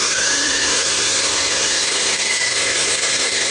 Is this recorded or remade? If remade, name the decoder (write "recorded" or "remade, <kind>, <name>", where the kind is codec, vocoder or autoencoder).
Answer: remade, codec, SNAC